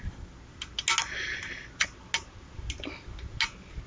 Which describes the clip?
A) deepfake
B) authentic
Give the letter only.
B